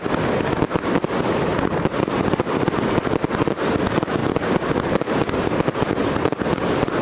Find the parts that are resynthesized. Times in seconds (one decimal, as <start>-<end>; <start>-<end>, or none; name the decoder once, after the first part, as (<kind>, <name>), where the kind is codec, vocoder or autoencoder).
none